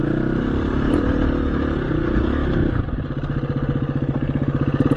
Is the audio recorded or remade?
recorded